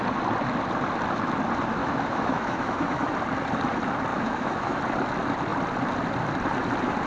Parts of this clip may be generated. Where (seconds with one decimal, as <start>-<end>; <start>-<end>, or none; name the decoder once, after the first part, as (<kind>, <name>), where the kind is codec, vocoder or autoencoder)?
1.8-3.1 (autoencoder, DAC-VAE); 4.1-4.8